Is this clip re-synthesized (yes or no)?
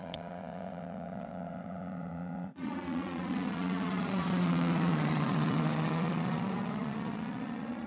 yes